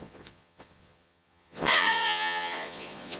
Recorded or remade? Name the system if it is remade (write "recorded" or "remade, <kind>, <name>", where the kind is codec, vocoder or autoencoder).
remade, vocoder, Vocos